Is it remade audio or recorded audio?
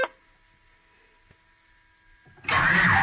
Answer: recorded